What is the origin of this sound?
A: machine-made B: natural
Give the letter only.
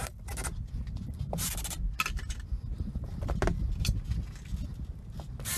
B